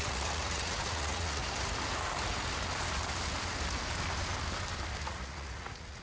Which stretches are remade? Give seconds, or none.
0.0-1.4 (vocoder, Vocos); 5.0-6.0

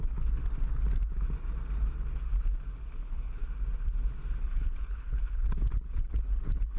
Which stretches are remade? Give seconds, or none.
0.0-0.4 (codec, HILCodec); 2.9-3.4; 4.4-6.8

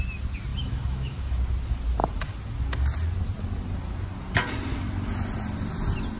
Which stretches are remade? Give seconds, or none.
0.5-1.4 (autoencoder, DAC-VAE)

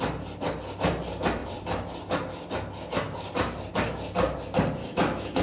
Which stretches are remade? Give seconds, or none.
4.8-5.4 (autoencoder, DAC-VAE)

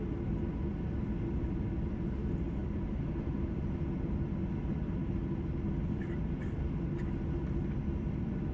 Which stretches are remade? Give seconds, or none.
2.6-3.1 (vocoder, BigVGAN v2)

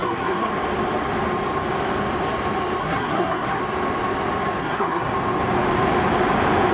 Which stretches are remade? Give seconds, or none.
0.0-0.5 (codec, SNAC); 2.8-3.6; 4.6-5.1

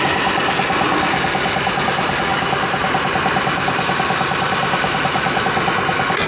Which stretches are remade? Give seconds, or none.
none

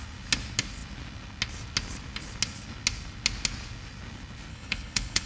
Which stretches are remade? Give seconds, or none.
4.5-5.3 (codec, HILCodec)